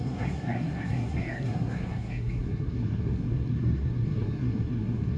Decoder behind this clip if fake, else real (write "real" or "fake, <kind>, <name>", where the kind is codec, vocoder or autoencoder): fake, codec, SNAC